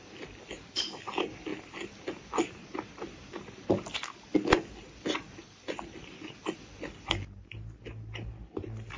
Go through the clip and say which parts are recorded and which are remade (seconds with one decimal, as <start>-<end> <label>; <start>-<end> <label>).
0.0-9.0 recorded